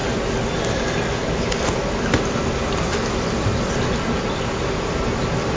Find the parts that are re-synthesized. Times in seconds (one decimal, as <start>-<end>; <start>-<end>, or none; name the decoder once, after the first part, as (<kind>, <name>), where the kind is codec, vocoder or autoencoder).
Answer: none